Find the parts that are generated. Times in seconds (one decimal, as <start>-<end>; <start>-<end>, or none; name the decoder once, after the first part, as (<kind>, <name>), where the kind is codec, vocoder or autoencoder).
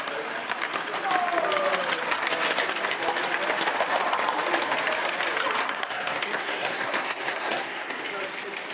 5.6-8.0 (codec, SNAC)